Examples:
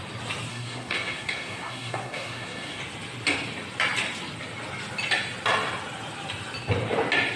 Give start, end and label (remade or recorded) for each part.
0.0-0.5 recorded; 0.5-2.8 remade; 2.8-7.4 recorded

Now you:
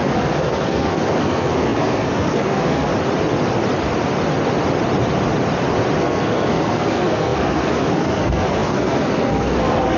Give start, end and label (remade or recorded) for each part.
0.0-2.9 remade; 2.9-6.0 recorded; 6.0-10.0 remade

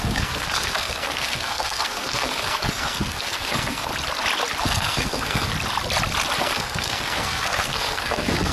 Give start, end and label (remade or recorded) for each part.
0.0-3.9 remade; 3.9-4.6 recorded; 4.6-5.5 remade; 5.5-6.4 recorded; 6.4-8.5 remade

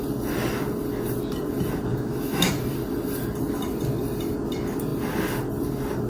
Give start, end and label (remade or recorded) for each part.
0.0-1.9 recorded; 1.9-2.5 remade; 2.5-6.1 recorded